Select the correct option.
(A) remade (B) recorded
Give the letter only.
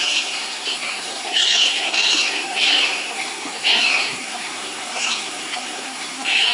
A